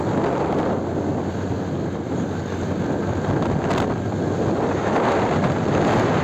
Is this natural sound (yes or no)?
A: yes